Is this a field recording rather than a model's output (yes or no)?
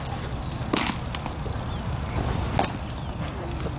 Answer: yes